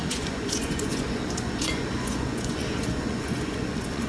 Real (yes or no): no